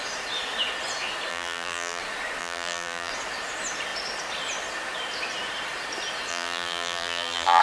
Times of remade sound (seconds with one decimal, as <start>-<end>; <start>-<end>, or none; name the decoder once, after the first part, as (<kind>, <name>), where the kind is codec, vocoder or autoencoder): 1.3-2.0 (vocoder, BigVGAN v2); 2.4-3.1; 6.3-7.6